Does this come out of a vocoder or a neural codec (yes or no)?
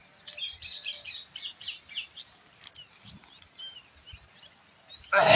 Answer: no